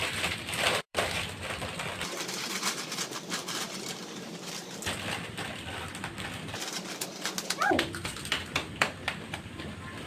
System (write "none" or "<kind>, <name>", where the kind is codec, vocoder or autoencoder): vocoder, BigVGAN v2